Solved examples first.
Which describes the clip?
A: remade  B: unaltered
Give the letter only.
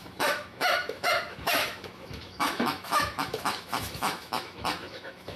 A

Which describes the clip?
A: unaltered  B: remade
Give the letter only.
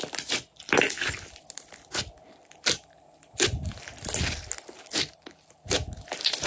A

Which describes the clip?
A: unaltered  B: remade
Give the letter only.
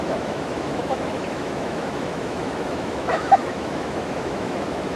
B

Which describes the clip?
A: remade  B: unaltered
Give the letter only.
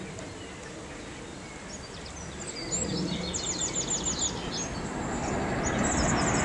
B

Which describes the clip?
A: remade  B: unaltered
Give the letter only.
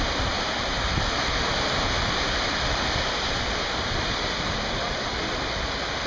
B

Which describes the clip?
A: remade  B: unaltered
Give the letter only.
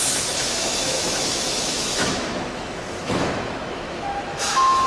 A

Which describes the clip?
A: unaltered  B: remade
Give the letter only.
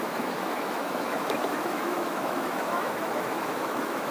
B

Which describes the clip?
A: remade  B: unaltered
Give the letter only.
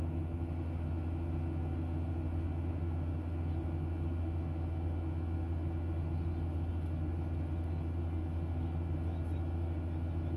B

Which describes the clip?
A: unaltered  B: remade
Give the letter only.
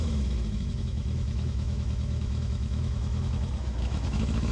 B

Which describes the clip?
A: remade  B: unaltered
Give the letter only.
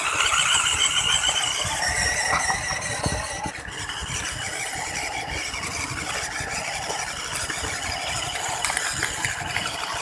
B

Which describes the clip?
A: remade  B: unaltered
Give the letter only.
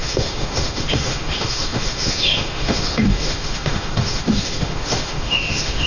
A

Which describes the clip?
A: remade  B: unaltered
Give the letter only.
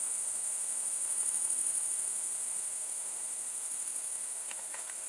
A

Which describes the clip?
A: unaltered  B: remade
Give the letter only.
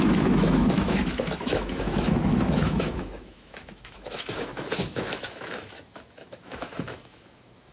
B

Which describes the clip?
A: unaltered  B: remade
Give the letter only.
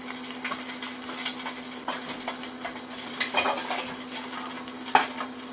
A